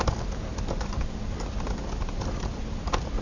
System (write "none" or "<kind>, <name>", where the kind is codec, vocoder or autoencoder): none